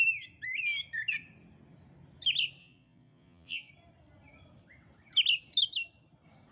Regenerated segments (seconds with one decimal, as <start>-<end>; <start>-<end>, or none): 2.6-3.7